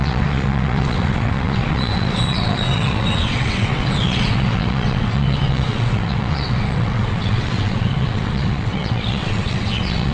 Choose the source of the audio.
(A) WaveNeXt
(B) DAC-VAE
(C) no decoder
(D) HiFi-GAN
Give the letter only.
A